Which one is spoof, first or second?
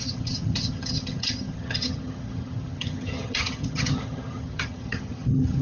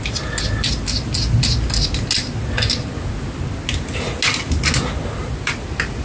first